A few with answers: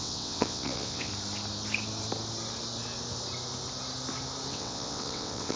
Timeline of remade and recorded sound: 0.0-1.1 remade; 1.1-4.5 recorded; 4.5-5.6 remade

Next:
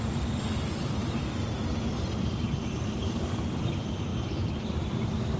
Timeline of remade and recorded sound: 0.0-5.4 recorded

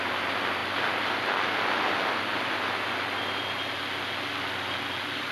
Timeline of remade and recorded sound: 0.0-5.3 recorded

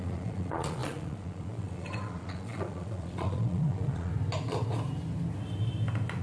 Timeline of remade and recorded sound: 0.0-4.1 remade; 4.1-6.2 recorded

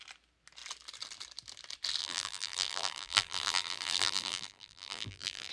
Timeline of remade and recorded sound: 0.0-2.0 recorded; 2.0-5.5 remade

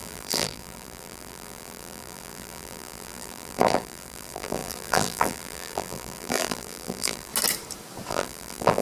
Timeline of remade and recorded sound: 0.0-7.3 remade; 7.3-8.1 recorded; 8.1-8.8 remade

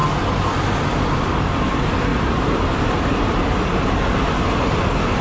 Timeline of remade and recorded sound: 0.0-2.1 recorded; 2.1-2.8 remade; 2.8-5.2 recorded

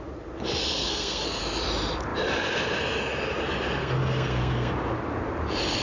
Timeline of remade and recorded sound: 0.0-0.6 recorded; 0.6-1.4 remade; 1.4-3.8 recorded; 3.8-4.7 remade; 4.7-5.8 recorded